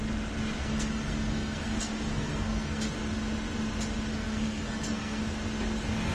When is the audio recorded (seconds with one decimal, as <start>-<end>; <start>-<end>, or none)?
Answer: 0.0-0.6; 2.9-4.1; 5.2-6.1